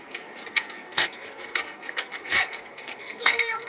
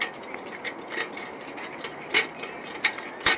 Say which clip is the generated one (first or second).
first